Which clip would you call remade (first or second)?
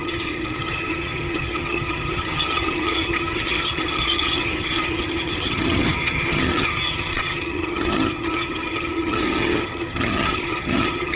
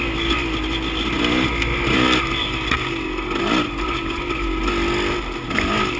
first